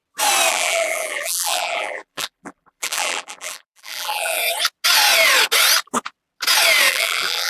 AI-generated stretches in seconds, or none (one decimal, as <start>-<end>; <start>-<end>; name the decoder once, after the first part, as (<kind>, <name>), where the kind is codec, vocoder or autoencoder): 0.5-4.4 (vocoder, BigVGAN v2); 6.9-7.5